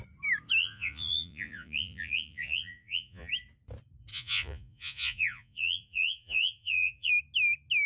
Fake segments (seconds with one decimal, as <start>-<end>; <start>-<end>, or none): 0.6-3.3; 4.1-7.1